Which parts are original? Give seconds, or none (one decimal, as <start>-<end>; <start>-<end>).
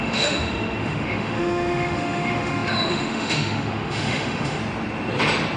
4.6-5.6